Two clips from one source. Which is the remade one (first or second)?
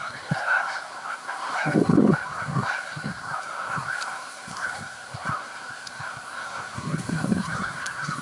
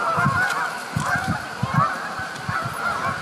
first